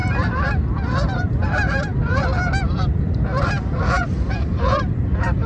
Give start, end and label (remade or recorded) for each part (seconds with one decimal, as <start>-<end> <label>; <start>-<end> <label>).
0.0-5.5 remade